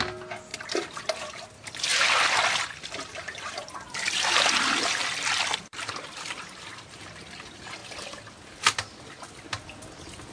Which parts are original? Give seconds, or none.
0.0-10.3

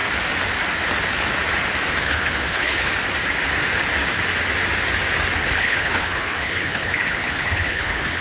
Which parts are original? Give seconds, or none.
0.0-2.0; 2.9-5.6

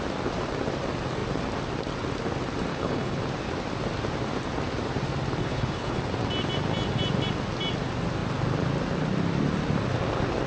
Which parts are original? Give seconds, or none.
0.0-2.7; 3.2-5.4; 6.0-10.5

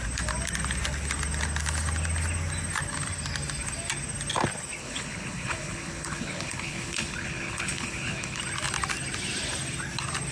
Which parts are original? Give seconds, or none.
0.0-4.8; 8.4-10.3

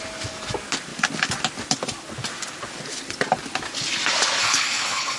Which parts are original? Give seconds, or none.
0.0-4.4

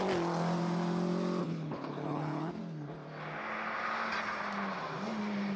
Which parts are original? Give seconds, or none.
0.0-1.4; 2.5-5.6